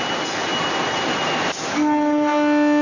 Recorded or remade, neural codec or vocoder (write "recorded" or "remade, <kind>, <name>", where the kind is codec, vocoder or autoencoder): recorded